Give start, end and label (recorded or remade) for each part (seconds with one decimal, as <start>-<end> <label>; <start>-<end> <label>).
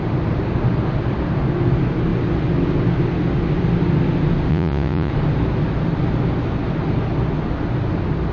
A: 0.0-4.5 recorded; 4.5-5.1 remade; 5.1-8.3 recorded